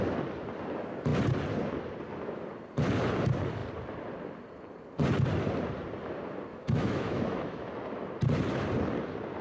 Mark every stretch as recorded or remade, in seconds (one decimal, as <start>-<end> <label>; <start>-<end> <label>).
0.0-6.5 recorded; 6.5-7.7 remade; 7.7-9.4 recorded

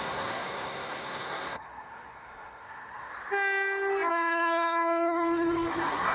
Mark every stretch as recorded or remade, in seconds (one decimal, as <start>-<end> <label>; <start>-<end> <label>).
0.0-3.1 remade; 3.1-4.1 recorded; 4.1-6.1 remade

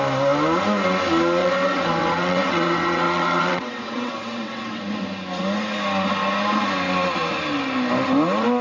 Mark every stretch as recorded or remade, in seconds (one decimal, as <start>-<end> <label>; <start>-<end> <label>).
0.0-1.4 recorded; 1.4-4.8 remade; 4.8-8.6 recorded

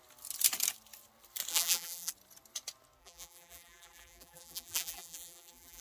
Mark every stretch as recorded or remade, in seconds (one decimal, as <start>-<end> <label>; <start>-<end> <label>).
0.0-1.5 recorded; 1.5-2.1 remade; 2.1-3.0 recorded; 3.0-5.8 remade